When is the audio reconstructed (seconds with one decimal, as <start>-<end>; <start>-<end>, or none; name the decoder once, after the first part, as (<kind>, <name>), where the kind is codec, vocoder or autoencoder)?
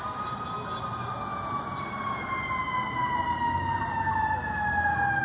none